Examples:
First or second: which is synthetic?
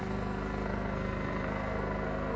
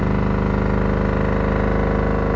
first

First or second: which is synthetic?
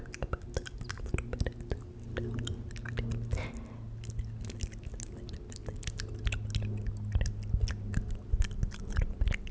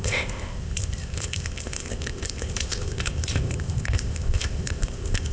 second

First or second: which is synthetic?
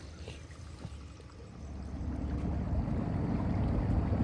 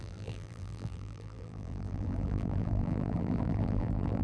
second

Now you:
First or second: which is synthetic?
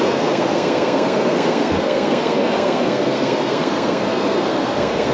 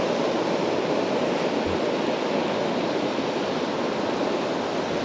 first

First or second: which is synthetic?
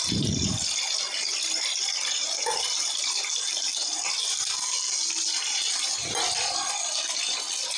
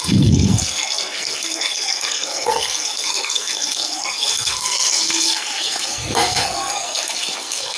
second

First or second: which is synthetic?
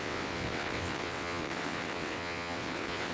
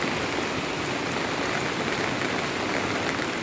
first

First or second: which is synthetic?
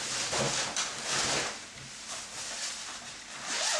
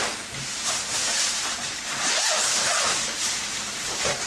second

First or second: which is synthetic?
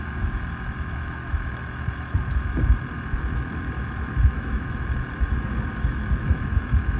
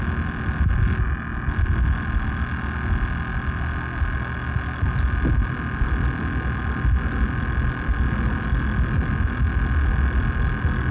first